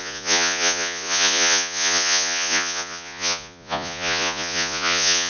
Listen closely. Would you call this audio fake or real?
fake